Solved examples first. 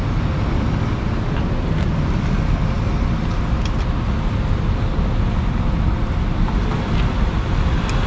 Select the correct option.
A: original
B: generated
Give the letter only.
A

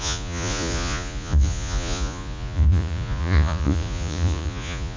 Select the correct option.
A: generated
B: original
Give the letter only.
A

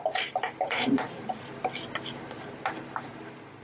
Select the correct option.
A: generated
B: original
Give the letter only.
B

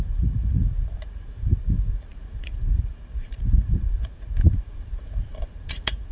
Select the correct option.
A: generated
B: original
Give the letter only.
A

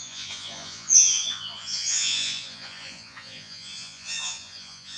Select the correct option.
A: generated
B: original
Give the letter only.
A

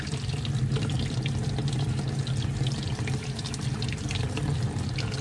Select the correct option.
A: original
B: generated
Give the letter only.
A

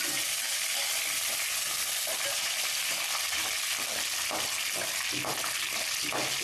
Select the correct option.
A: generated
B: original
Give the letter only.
B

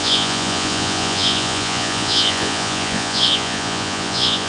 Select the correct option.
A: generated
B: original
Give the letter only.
A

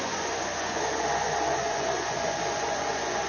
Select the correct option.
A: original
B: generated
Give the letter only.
B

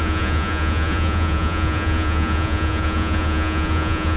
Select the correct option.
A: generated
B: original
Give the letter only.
A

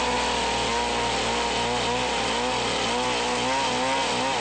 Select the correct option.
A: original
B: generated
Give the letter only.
A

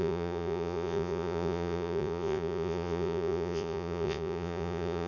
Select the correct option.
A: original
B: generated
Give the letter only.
B